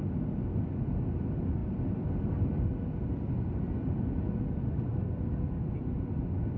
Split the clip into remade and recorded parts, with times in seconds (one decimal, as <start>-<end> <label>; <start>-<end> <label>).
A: 0.0-1.6 recorded; 1.6-4.0 remade; 4.0-4.9 recorded; 4.9-5.6 remade; 5.6-6.6 recorded